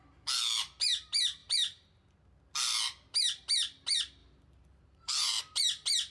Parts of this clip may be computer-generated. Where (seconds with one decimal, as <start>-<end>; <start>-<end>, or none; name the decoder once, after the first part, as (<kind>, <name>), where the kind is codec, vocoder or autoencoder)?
4.2-5.4 (vocoder, BigVGAN v2)